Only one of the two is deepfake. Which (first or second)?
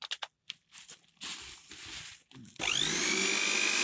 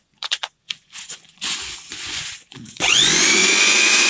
second